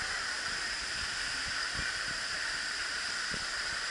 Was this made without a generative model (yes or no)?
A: yes